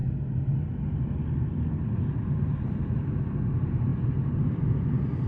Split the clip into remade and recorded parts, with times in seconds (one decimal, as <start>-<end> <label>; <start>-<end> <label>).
0.0-5.3 recorded